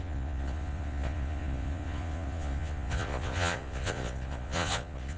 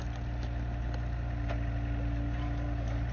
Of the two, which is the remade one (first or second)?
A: first